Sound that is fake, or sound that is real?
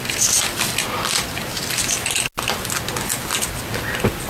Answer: real